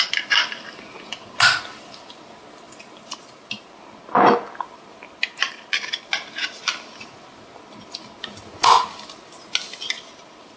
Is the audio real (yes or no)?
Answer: yes